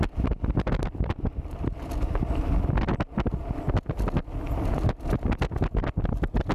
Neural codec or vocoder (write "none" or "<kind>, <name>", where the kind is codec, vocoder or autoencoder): none